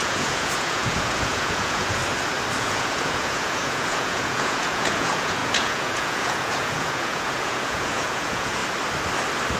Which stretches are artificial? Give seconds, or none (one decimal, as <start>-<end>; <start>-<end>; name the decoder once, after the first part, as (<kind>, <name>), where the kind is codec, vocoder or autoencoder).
0.0-2.0 (vocoder, Vocos); 2.6-8.6